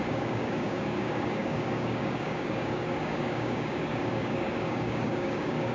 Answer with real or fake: fake